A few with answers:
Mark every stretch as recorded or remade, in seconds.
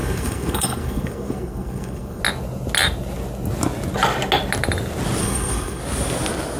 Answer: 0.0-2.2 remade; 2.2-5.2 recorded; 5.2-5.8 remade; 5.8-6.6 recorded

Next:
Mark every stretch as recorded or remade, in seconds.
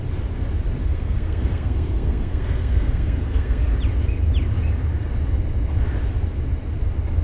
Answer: 0.0-0.8 recorded; 0.8-3.7 remade; 3.7-7.2 recorded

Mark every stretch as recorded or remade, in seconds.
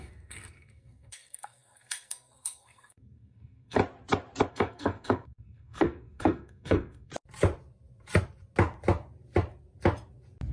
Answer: 0.0-3.8 remade; 3.8-4.5 recorded; 4.5-7.1 remade; 7.1-10.5 recorded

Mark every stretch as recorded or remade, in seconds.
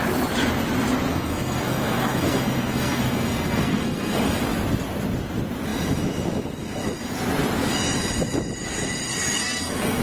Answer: 0.0-1.1 recorded; 1.1-4.4 remade; 4.4-9.1 recorded; 9.1-10.0 remade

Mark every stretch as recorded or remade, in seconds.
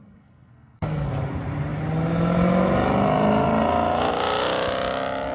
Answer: 0.0-1.1 remade; 1.1-5.3 recorded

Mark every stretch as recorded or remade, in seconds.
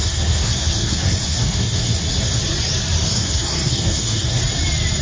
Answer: 0.0-2.4 remade; 2.4-3.0 recorded; 3.0-4.4 remade; 4.4-5.0 recorded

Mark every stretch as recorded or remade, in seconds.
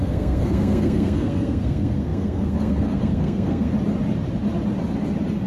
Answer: 0.0-3.7 remade; 3.7-5.5 recorded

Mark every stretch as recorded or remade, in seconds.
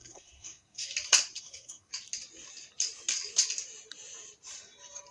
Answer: 0.0-0.9 remade; 0.9-1.4 recorded; 1.4-1.9 remade; 1.9-5.1 recorded